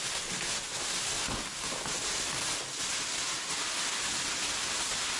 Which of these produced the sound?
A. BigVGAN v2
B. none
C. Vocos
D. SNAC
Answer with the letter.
B